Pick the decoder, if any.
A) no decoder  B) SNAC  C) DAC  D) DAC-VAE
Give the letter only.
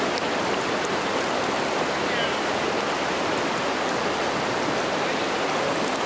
A